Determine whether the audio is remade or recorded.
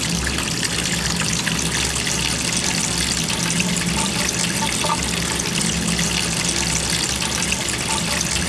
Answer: recorded